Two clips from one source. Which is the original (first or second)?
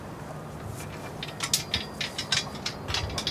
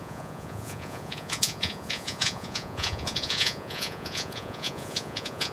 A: first